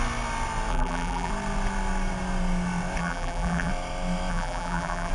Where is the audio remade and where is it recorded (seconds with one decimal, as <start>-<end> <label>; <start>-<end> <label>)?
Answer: 0.0-0.7 recorded; 0.7-1.3 remade; 1.3-3.0 recorded; 3.0-3.7 remade; 3.7-4.3 recorded; 4.3-5.1 remade